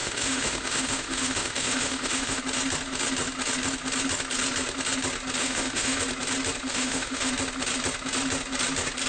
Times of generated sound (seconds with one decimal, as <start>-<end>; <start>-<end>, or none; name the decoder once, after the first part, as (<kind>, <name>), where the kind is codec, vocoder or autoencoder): 0.0-2.4 (autoencoder, DAC-VAE); 5.4-6.0; 6.7-7.3